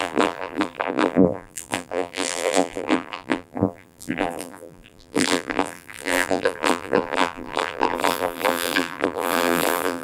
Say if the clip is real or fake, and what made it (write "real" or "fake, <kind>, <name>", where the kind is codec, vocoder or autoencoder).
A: fake, vocoder, BigVGAN v2